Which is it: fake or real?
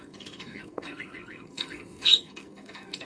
fake